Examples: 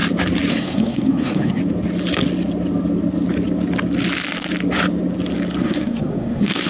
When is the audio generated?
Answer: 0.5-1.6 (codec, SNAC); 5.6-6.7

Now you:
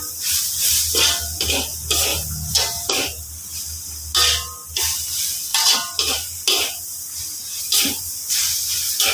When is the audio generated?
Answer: none

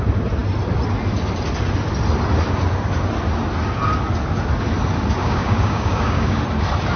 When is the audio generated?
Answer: 5.2-6.4 (codec, DAC)